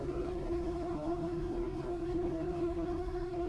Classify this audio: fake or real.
fake